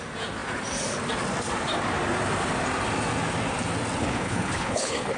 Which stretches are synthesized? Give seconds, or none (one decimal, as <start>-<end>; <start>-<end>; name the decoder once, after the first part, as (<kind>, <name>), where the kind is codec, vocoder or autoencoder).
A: 4.0-5.2 (codec, HILCodec)